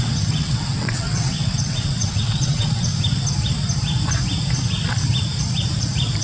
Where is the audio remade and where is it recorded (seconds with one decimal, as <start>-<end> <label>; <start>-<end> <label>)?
0.0-2.9 remade; 2.9-6.2 recorded